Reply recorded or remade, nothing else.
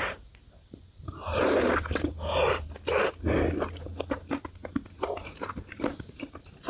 recorded